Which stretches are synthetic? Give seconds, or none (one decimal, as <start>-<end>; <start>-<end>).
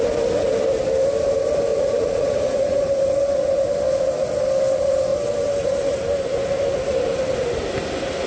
1.7-2.9